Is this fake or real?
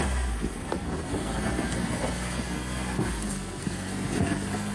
fake